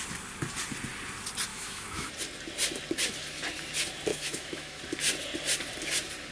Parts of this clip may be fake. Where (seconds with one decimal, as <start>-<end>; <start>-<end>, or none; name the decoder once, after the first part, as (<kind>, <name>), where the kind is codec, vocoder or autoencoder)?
1.5-2.1 (autoencoder, DAC-VAE); 4.1-4.8